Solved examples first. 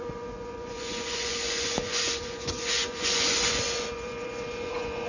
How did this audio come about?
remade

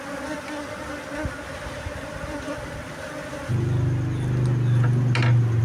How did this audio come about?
recorded